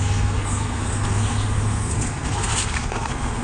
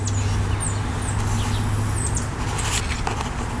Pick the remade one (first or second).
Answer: first